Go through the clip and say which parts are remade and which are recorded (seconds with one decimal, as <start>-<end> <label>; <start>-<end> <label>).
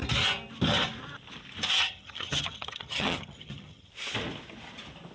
0.0-1.8 recorded; 1.8-3.9 remade; 3.9-5.1 recorded